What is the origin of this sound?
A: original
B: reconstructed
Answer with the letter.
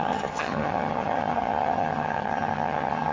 B